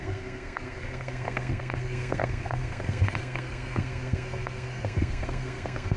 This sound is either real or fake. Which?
fake